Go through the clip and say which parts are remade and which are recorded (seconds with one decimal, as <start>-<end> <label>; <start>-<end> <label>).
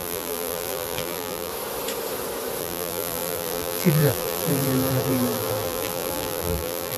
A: 0.0-1.5 remade; 1.5-2.6 recorded; 2.6-7.0 remade